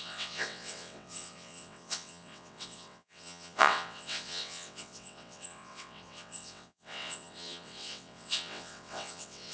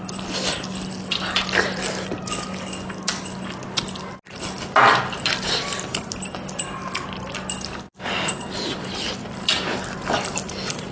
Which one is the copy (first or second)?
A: first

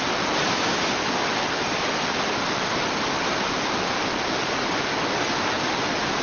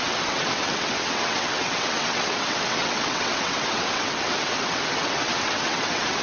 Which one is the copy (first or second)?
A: second